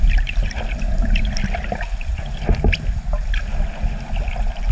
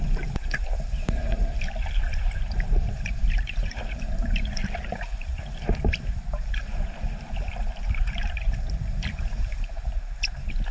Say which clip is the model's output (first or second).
second